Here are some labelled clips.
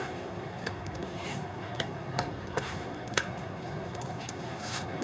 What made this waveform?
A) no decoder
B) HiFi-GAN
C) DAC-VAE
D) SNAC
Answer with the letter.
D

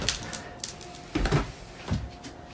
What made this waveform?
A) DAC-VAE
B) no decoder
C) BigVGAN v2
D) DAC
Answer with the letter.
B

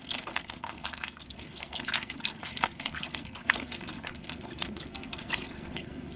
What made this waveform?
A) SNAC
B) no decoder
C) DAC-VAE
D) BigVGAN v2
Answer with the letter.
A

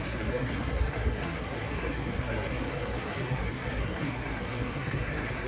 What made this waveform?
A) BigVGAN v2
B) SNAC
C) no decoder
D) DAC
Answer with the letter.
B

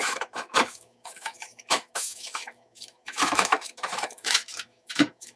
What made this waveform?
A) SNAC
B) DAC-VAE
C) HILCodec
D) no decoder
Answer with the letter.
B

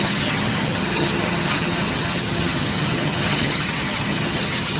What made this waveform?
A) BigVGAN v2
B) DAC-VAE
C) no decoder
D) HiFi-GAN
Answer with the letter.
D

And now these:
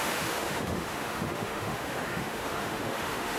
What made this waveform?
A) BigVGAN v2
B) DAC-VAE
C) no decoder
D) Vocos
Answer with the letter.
B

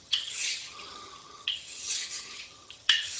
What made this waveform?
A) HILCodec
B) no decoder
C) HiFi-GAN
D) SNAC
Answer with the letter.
C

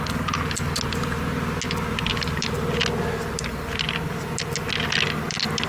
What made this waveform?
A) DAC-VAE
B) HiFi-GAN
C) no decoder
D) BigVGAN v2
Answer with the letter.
C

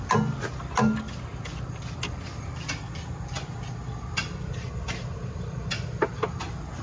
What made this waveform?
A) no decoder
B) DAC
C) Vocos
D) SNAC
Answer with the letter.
A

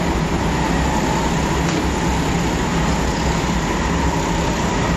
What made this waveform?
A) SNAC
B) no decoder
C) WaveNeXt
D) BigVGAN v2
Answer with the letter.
B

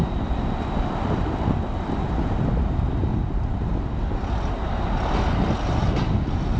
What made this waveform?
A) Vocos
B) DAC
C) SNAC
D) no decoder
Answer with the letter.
D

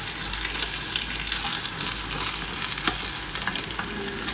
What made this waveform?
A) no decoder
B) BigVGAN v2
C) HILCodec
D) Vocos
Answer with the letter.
A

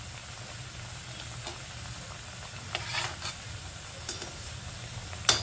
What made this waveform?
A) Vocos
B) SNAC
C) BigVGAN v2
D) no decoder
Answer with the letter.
D